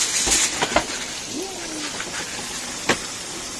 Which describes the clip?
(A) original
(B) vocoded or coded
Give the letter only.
A